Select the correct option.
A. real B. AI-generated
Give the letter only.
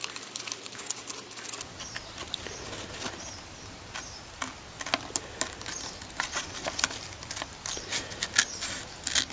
A